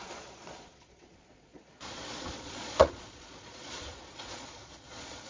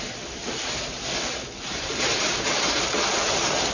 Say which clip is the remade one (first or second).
first